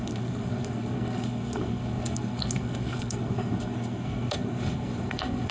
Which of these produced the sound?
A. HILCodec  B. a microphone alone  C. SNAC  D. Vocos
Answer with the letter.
C